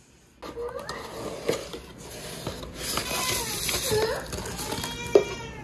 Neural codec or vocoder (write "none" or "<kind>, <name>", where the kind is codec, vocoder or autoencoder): none